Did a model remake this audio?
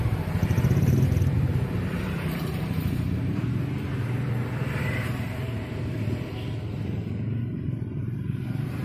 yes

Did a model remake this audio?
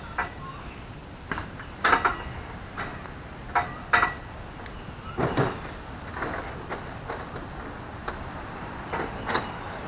no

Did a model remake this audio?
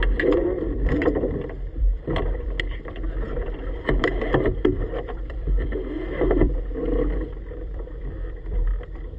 yes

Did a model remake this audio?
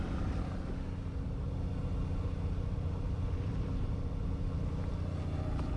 no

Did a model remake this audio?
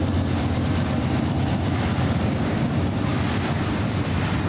yes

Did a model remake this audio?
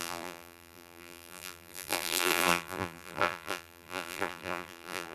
yes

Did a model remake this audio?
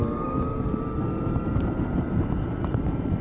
yes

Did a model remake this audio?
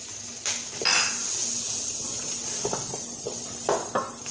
no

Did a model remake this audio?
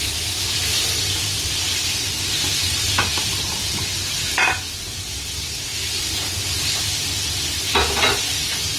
no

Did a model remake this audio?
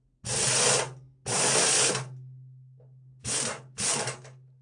no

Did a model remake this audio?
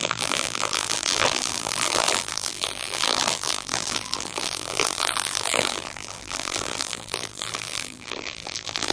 yes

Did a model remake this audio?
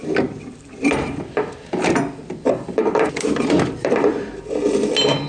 yes